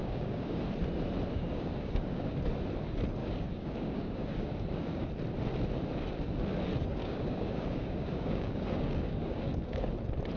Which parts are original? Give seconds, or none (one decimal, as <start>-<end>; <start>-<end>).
0.6-1.3; 2.2-3.2; 5.1-7.0; 9.9-10.4